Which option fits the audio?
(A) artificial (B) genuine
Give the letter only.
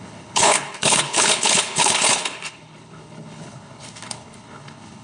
A